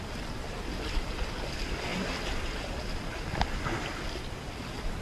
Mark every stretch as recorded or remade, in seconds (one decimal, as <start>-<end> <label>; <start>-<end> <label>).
0.0-5.0 recorded